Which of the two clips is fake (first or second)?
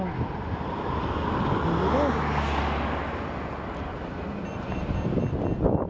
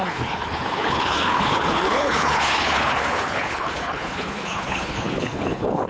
second